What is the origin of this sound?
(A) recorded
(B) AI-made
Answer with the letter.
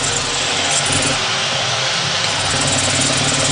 A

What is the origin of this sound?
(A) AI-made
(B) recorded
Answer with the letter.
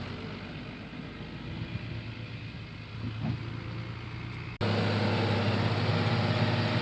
B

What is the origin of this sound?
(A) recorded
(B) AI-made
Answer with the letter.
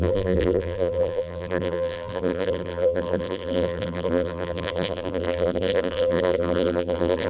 B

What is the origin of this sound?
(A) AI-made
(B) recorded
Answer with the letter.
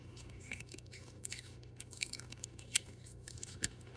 A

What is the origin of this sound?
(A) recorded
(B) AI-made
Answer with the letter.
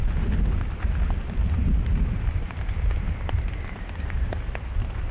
A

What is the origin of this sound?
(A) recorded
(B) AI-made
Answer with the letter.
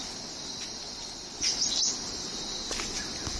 A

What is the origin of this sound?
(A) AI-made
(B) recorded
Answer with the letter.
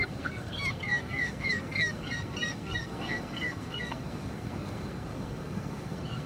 A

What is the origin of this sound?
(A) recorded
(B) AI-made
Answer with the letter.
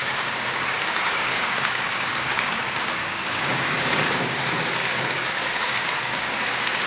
B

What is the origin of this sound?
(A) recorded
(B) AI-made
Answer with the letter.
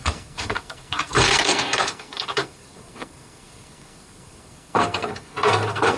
B